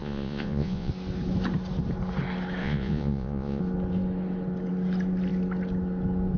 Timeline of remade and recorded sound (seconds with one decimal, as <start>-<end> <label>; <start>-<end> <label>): 0.0-0.9 remade; 0.9-2.6 recorded; 2.6-3.6 remade; 3.6-6.4 recorded

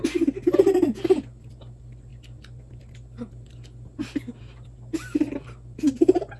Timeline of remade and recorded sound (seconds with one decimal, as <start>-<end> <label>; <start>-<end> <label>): 0.0-6.4 recorded

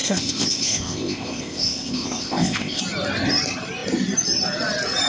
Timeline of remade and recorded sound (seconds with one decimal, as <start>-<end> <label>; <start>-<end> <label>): 0.0-2.8 remade; 2.8-5.1 recorded

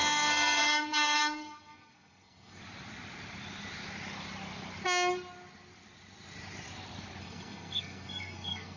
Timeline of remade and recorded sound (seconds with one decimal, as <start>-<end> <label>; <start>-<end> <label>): 0.0-2.6 remade; 2.6-7.2 recorded; 7.2-8.8 remade